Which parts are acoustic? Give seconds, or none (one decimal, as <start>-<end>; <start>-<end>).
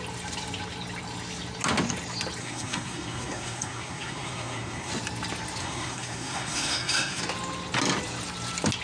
0.0-2.4; 4.9-5.6; 7.2-8.8